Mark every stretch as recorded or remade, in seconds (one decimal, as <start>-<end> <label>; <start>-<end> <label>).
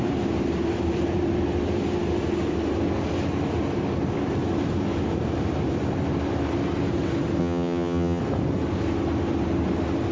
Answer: 0.0-7.4 recorded; 7.4-8.2 remade; 8.2-10.1 recorded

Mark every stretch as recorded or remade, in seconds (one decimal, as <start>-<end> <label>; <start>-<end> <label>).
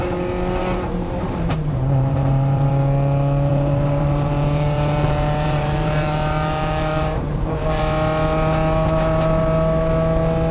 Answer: 0.0-0.6 recorded; 0.6-2.7 remade; 2.7-3.5 recorded; 3.5-7.8 remade; 7.8-10.5 recorded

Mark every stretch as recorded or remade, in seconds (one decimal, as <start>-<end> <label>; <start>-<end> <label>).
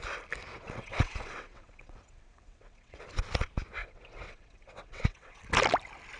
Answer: 0.0-0.5 recorded; 0.5-3.0 remade; 3.0-3.8 recorded; 3.8-5.4 remade; 5.4-6.2 recorded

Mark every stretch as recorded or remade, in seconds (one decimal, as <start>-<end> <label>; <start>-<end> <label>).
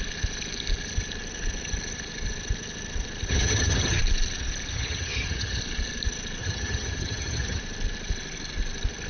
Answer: 0.0-3.3 recorded; 3.3-4.0 remade; 4.0-4.7 recorded; 4.7-5.6 remade; 5.6-6.4 recorded; 6.4-7.6 remade; 7.6-9.1 recorded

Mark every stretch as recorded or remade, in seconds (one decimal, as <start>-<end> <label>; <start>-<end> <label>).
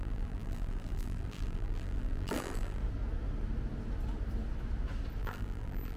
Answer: 0.0-2.8 remade; 2.8-5.2 recorded; 5.2-6.0 remade